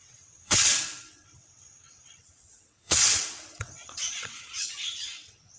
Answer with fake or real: fake